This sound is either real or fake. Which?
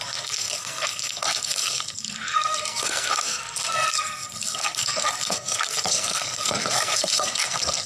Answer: fake